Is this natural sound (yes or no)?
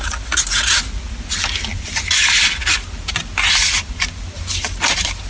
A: yes